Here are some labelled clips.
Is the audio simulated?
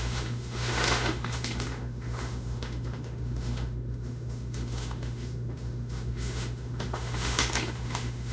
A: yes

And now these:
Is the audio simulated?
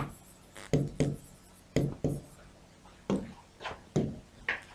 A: no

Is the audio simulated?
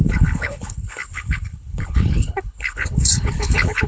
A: yes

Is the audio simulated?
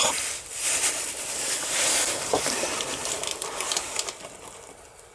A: yes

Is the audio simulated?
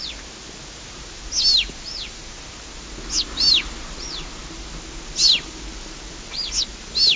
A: no